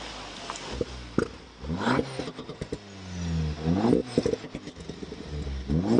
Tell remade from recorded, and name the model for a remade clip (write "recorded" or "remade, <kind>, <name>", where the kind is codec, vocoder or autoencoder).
recorded